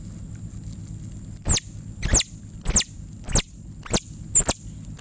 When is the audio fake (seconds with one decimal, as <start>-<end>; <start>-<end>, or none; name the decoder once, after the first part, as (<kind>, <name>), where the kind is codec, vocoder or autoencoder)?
none